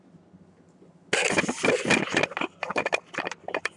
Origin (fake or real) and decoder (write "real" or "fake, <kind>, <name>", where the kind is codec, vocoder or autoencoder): real